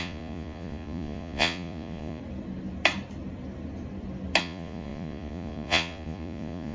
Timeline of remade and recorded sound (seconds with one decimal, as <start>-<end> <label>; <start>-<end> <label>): 0.0-2.2 remade; 2.2-4.4 recorded; 4.4-6.7 remade